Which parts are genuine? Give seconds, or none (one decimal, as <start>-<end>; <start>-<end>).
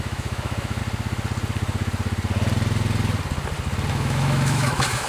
0.8-3.9